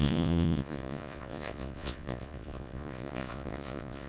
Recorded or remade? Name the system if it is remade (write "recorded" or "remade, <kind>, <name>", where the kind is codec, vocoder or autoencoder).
remade, vocoder, Vocos